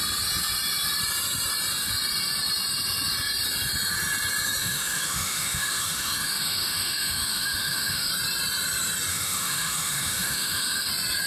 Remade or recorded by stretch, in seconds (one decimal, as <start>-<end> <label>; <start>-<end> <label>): 0.0-4.6 recorded; 4.6-8.1 remade; 8.1-9.1 recorded; 9.1-10.9 remade; 10.9-11.3 recorded